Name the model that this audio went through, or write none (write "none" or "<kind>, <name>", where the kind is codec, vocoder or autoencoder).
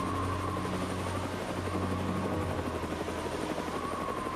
none